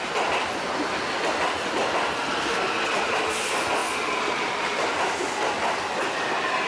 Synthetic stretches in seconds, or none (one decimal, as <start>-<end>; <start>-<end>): none